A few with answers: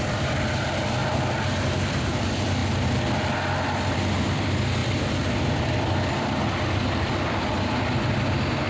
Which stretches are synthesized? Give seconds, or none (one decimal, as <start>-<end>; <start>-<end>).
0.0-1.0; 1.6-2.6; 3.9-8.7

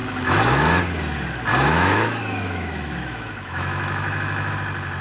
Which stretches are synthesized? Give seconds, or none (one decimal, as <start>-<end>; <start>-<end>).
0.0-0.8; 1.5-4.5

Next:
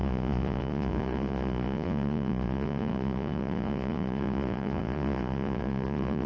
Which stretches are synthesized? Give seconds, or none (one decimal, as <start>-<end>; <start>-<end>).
0.0-6.3

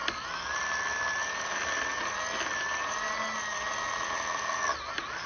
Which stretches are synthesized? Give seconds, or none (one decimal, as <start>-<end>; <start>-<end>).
none